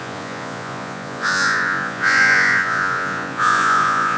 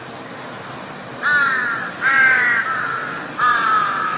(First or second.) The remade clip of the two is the first